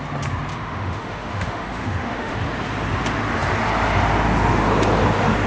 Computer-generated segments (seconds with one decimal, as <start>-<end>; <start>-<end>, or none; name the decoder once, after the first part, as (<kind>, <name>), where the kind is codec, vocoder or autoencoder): 0.5-2.4 (autoencoder, DAC-VAE)